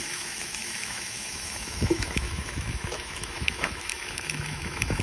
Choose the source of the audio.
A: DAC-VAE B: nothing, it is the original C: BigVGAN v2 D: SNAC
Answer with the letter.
A